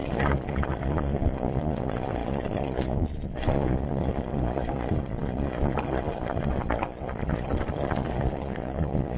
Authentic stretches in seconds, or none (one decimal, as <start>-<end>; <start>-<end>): none